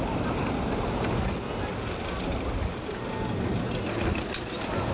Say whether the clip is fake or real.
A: real